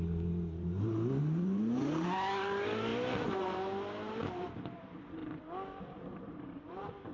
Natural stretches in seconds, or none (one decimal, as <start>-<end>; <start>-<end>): 2.9-4.1; 5.2-5.8